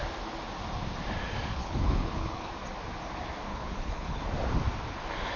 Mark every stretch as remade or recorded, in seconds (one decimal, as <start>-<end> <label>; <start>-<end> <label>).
0.0-1.5 recorded; 1.5-2.5 remade; 2.5-3.5 recorded; 3.5-4.2 remade; 4.2-5.4 recorded

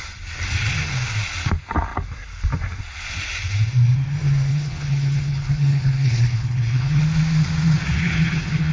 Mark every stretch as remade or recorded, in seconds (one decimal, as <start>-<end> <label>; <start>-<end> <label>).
0.0-4.5 recorded; 4.5-7.0 remade; 7.0-7.9 recorded; 7.9-8.7 remade

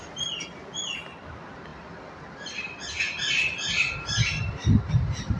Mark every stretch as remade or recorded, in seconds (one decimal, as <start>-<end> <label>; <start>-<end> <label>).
0.0-5.4 recorded

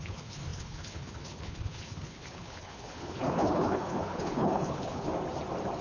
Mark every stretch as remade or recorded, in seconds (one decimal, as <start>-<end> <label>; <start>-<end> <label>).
0.0-5.1 remade; 5.1-5.8 recorded

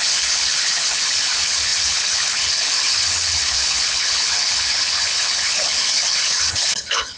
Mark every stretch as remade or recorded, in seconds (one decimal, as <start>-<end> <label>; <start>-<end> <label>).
0.0-7.2 remade